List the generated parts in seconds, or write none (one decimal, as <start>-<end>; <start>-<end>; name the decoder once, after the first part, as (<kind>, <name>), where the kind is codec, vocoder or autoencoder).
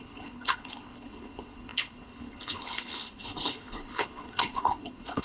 0.0-5.2 (codec, HILCodec)